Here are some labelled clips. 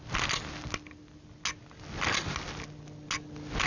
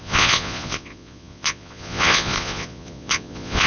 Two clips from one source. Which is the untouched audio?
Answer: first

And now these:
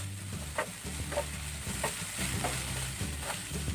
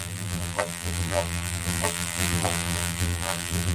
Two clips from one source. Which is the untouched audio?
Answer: first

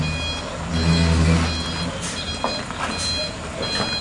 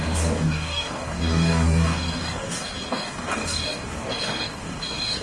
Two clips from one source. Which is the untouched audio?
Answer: first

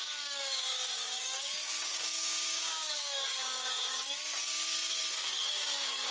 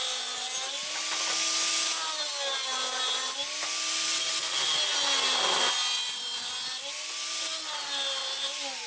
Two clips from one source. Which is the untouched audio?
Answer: second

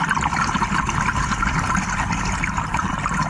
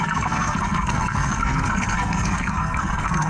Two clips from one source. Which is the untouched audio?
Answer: first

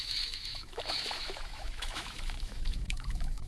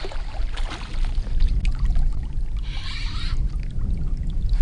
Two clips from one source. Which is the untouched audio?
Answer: second